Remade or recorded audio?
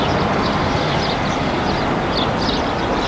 recorded